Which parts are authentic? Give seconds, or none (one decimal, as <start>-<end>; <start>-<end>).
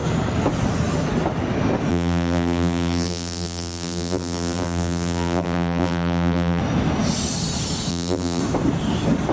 0.0-1.9; 6.6-7.9; 8.4-9.3